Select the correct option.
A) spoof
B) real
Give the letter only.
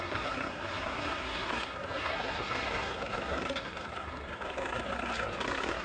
A